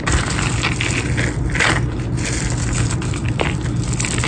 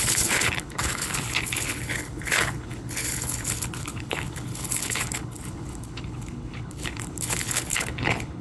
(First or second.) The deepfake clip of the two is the second